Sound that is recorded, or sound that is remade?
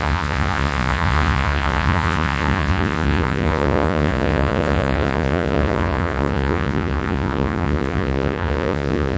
remade